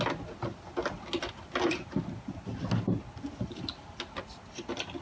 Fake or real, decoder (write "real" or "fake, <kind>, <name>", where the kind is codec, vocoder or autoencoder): real